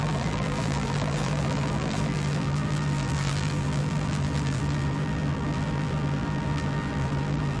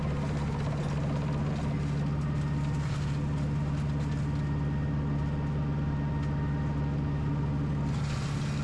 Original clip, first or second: second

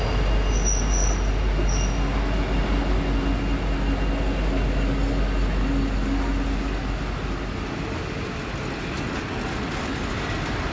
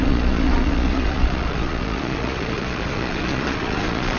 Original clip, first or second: first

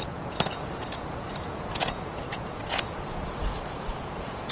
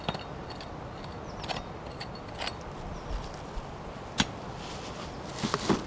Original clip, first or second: second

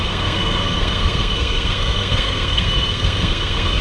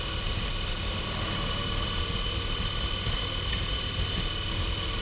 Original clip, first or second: second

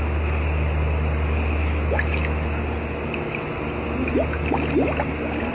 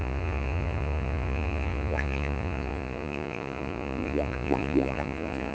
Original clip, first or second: first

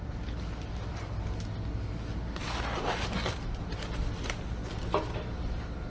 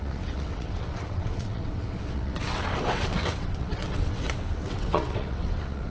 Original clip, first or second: first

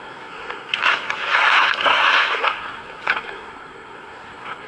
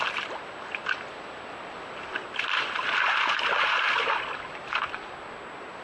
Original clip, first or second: second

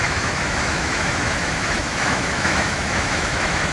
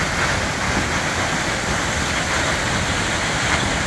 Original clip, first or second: second